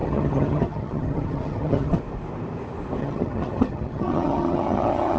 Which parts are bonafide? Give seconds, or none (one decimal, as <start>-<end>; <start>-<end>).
2.0-3.0